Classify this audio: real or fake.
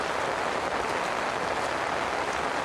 real